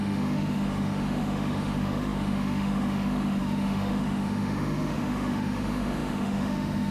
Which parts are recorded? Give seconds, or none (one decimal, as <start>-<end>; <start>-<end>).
none